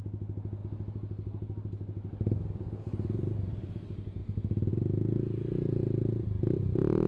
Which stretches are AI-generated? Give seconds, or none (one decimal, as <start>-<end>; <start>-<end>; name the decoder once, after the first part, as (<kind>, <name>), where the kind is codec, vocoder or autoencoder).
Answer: none